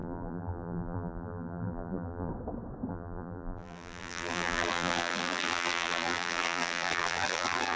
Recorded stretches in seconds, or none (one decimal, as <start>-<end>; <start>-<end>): 2.3-2.9